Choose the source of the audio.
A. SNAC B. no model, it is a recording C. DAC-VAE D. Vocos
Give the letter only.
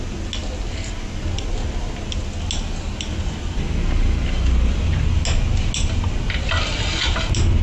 B